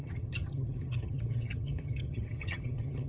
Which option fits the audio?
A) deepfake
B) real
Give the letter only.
A